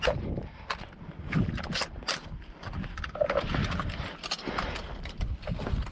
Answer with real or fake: real